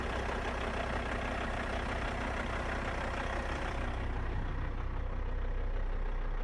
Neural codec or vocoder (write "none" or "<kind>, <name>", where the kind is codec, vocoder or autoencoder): none